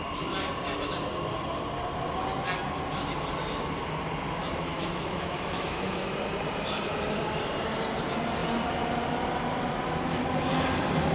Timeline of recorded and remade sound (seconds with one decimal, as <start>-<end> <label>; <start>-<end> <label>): 0.0-4.4 recorded; 4.4-6.1 remade; 6.1-11.1 recorded